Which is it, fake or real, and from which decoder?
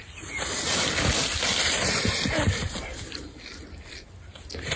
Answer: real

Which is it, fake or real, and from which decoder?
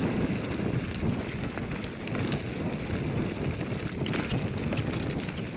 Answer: real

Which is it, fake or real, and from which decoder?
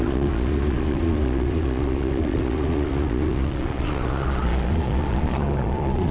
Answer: fake, vocoder, Vocos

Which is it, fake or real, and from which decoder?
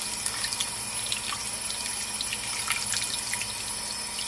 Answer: real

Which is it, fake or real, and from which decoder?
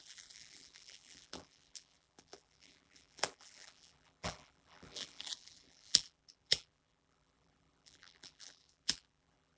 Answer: fake, vocoder, BigVGAN v2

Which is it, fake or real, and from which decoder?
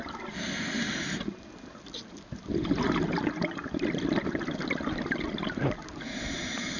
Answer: real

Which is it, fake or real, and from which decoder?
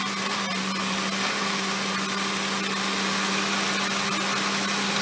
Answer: real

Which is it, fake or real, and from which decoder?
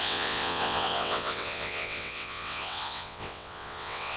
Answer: fake, vocoder, WaveNeXt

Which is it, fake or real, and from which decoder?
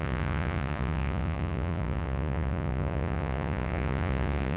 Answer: fake, vocoder, Vocos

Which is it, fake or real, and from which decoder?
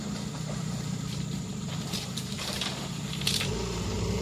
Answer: fake, vocoder, BigVGAN v2